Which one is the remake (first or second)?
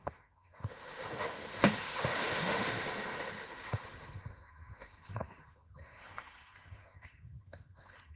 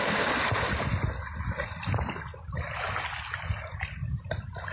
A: first